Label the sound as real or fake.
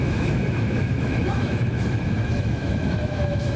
fake